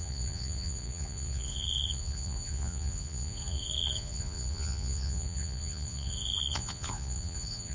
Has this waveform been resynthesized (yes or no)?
yes